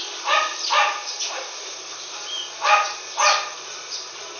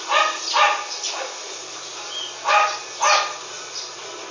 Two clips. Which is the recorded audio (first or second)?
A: second